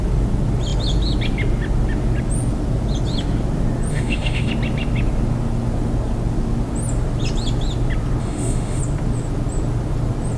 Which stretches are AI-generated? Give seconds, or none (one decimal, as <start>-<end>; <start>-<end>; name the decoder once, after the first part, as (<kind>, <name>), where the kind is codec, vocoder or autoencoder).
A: 3.9-4.5 (autoencoder, DAC-VAE); 8.2-8.8